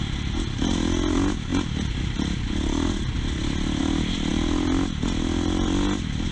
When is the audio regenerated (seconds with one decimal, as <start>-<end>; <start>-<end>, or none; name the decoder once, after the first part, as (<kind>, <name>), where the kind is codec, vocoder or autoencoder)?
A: none